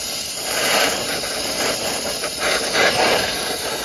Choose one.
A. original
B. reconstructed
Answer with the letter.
B